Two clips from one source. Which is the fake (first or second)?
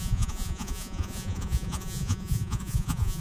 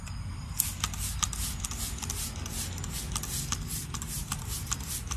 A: first